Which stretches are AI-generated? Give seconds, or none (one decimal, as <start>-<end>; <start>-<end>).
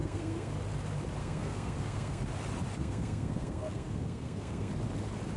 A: 0.0-0.5; 1.2-2.2; 2.8-4.7